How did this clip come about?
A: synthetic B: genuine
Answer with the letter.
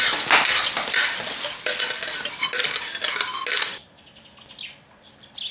B